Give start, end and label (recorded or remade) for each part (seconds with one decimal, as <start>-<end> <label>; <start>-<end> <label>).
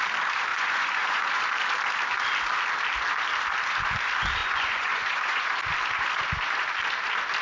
0.0-0.5 recorded; 0.5-1.4 remade; 1.4-4.4 recorded; 4.4-5.5 remade; 5.5-7.4 recorded